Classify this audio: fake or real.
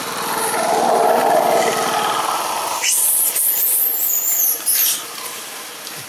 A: real